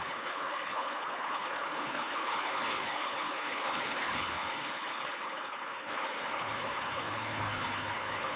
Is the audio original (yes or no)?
no